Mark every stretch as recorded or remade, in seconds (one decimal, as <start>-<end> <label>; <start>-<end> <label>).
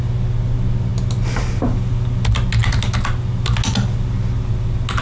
0.0-5.0 recorded